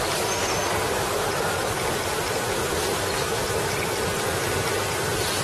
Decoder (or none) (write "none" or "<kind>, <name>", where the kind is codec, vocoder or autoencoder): none